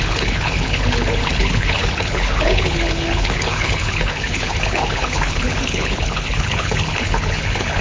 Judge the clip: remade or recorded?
remade